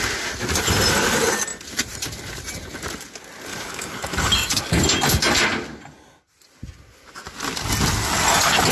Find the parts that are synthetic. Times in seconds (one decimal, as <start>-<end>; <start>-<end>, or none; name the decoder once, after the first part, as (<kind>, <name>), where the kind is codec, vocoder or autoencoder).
3.5-4.6 (codec, DAC)